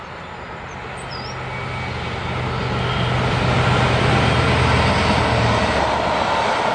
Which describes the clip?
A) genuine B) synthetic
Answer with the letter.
A